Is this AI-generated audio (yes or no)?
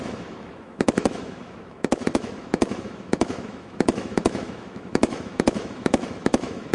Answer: yes